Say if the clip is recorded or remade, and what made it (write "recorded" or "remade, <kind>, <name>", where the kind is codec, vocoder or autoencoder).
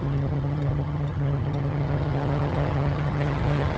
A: remade, vocoder, HiFi-GAN